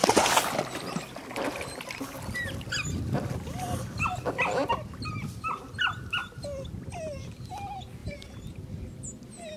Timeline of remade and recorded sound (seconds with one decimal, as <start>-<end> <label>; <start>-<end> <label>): 0.0-8.0 recorded; 8.0-8.6 remade; 8.6-9.6 recorded